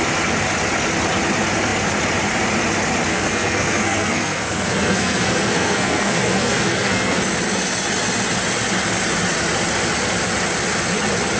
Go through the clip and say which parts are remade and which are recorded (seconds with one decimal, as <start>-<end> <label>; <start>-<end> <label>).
0.0-3.1 recorded; 3.1-7.2 remade; 7.2-11.4 recorded